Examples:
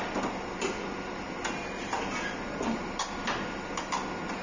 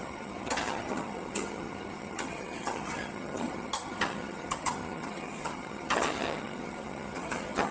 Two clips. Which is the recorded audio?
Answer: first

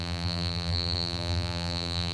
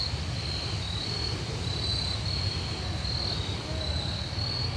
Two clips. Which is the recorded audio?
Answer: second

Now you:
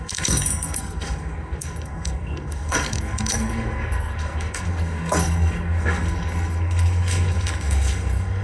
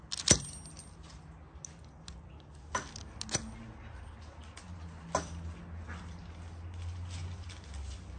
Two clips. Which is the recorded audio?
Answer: second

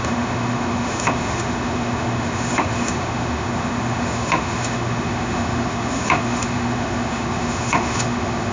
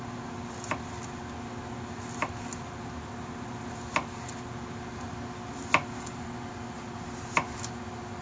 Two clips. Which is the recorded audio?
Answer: second